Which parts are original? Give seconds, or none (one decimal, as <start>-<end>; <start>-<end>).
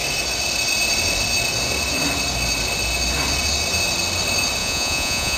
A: 0.0-4.6